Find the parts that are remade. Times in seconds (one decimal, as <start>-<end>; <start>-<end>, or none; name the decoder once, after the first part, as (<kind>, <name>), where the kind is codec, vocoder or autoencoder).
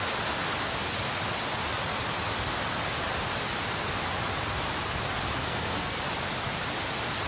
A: 5.4-6.0 (codec, SNAC)